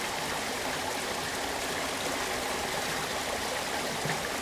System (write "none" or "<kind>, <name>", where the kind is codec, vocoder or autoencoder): none